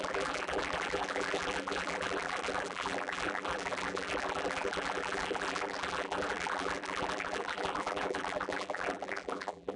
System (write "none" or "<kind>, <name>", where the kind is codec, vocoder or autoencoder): vocoder, BigVGAN v2